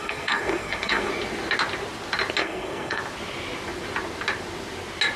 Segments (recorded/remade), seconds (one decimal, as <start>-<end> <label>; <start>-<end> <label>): 0.0-1.1 remade; 1.1-2.4 recorded; 2.4-3.0 remade; 3.0-5.2 recorded